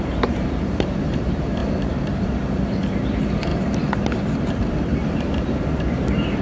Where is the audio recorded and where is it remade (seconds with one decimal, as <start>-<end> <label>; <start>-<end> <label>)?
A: 0.0-3.5 remade; 3.5-4.5 recorded; 4.5-6.4 remade

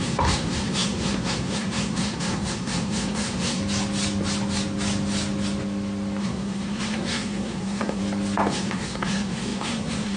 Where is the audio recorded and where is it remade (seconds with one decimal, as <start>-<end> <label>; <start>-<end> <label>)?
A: 0.0-3.6 remade; 3.6-6.2 recorded; 6.2-8.0 remade; 8.0-8.5 recorded; 8.5-10.2 remade

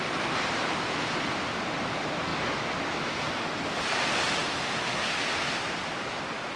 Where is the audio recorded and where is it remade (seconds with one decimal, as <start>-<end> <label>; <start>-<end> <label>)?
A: 0.0-6.6 recorded

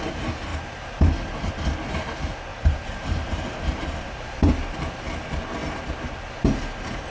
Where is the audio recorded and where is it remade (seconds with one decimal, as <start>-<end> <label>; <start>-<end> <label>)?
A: 0.0-0.5 recorded; 0.5-1.5 remade; 1.5-2.5 recorded; 2.5-4.5 remade; 4.5-7.1 recorded